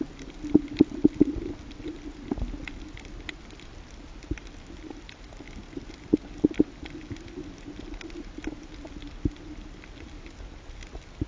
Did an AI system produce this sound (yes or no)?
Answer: no